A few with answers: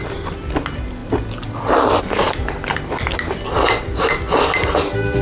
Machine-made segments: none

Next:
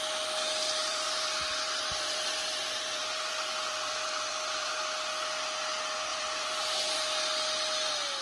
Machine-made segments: 0.8-4.7 (vocoder, BigVGAN v2); 6.1-7.0

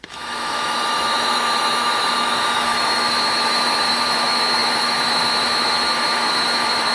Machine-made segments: 0.0-6.9 (autoencoder, DAC-VAE)

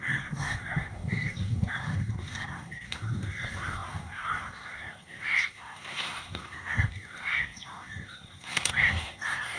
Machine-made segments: 0.0-9.6 (codec, SNAC)

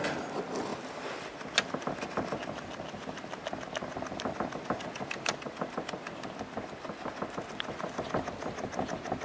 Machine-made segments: none

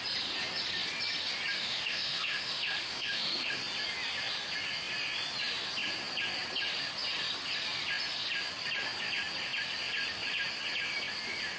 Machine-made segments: 1.6-3.6 (autoencoder, DAC-VAE)